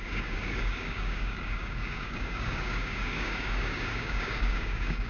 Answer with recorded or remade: remade